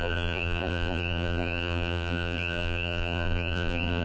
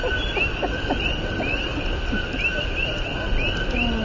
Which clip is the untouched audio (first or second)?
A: second